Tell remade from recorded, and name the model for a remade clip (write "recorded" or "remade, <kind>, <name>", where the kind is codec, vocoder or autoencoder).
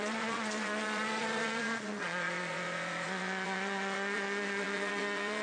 remade, vocoder, Vocos